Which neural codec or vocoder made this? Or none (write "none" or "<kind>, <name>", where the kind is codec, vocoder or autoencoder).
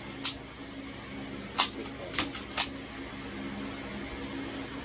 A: none